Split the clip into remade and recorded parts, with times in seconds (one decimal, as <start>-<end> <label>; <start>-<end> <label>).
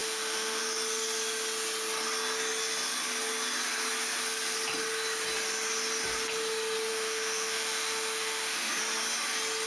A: 0.0-0.6 remade; 0.6-6.9 recorded; 6.9-8.8 remade; 8.8-9.7 recorded